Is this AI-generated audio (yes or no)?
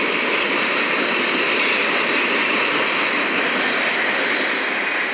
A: no